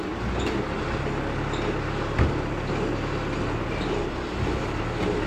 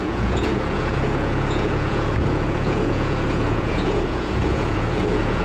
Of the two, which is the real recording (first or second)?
first